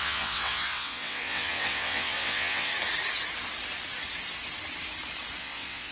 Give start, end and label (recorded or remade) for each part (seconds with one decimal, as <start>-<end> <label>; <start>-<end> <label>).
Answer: 0.0-2.7 remade; 2.7-5.4 recorded; 5.4-5.9 remade